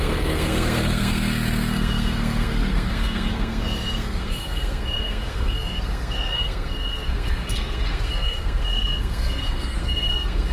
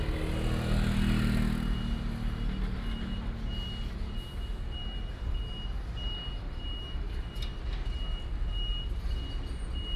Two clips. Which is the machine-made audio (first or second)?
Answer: first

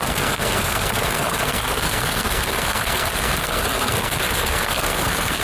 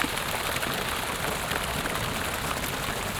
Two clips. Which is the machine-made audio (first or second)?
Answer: first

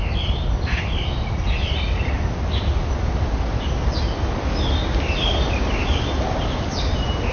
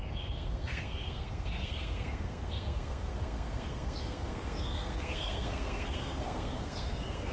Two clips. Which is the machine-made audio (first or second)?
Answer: second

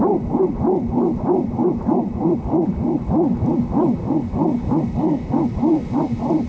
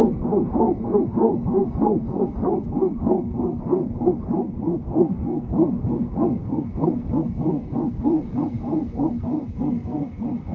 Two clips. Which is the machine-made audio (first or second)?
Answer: second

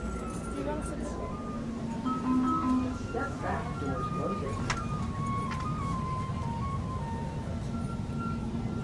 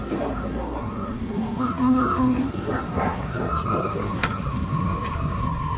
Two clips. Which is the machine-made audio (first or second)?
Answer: second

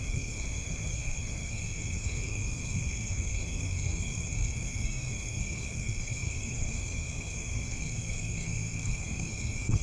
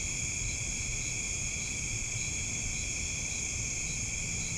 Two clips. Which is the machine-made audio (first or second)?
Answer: first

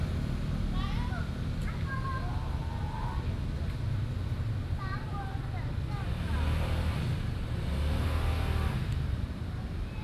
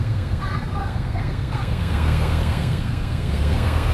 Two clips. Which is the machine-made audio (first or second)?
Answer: second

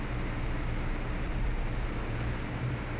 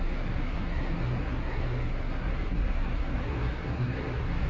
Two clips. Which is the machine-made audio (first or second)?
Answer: second